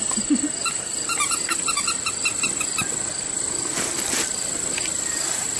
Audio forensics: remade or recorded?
recorded